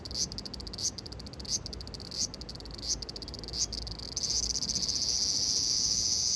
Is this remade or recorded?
recorded